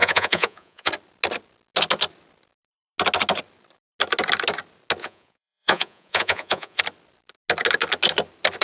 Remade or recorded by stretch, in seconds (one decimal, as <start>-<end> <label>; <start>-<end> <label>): 0.0-0.9 remade; 0.9-5.0 recorded; 5.0-6.8 remade; 6.8-8.6 recorded